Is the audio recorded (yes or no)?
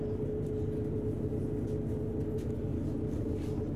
yes